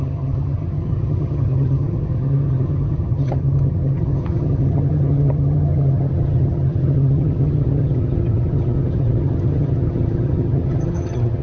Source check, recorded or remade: remade